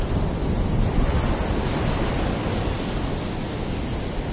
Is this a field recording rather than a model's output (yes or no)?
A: yes